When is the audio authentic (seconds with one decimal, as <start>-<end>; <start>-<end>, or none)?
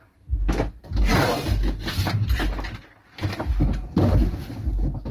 0.0-5.1